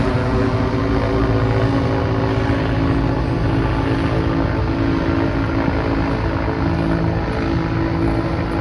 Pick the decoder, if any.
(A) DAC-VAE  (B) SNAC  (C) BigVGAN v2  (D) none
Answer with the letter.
D